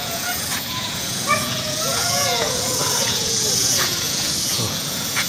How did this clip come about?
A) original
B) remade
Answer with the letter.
B